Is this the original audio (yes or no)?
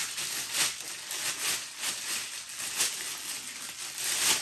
yes